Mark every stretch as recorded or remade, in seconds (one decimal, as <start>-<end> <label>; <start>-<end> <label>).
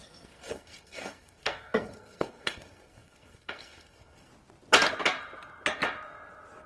0.0-4.3 remade; 4.3-6.7 recorded